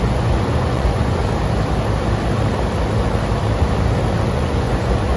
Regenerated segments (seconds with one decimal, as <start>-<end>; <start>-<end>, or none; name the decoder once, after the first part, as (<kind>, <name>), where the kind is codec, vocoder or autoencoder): 0.0-1.2 (vocoder, Vocos); 4.3-5.2